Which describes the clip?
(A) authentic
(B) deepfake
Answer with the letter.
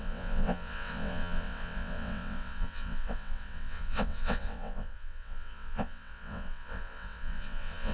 B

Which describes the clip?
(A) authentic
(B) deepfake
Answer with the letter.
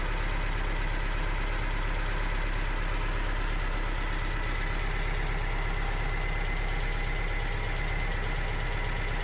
A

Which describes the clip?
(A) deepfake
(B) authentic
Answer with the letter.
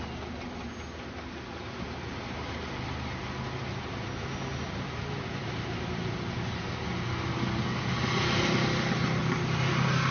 B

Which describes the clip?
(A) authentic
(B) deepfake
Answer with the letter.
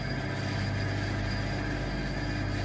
A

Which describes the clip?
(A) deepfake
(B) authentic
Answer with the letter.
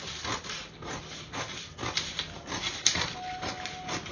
B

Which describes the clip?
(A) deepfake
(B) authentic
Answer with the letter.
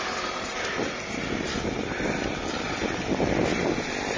B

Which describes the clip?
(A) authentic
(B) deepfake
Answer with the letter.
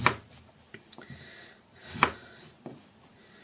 A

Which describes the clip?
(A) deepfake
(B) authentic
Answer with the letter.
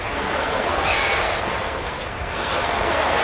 A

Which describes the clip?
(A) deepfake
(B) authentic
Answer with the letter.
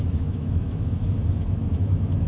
A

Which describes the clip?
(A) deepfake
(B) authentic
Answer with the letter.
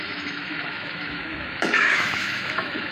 A